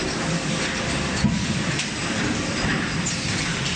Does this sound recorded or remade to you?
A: remade